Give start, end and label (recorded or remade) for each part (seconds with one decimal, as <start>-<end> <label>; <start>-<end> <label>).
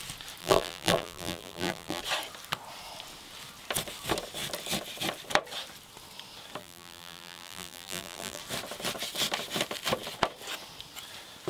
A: 0.0-0.4 recorded; 0.4-2.0 remade; 2.0-6.6 recorded; 6.6-8.4 remade; 8.4-11.5 recorded